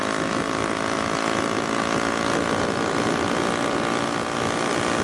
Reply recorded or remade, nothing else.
recorded